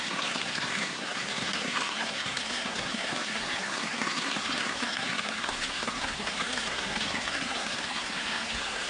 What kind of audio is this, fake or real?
fake